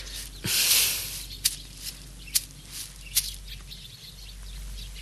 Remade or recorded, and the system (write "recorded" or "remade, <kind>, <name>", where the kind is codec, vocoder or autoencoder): recorded